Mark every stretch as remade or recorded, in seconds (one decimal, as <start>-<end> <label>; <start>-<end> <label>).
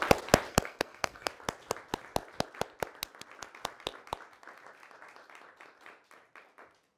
0.0-0.5 recorded; 0.5-1.3 remade; 1.3-7.0 recorded